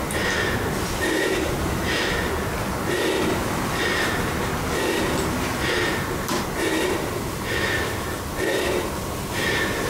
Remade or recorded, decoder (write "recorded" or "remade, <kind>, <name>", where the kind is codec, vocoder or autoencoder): recorded